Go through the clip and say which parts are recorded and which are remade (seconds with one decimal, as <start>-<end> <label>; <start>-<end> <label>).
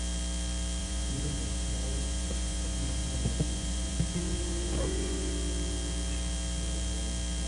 0.0-0.8 recorded; 0.8-5.3 remade; 5.3-7.5 recorded